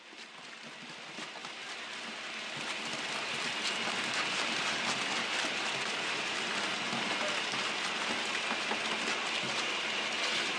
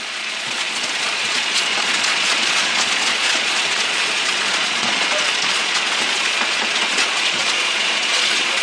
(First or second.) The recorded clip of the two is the first